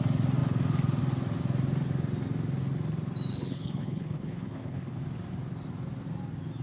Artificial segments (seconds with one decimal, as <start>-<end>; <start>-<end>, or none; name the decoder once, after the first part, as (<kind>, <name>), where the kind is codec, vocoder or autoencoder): 3.3-5.0 (codec, HILCodec)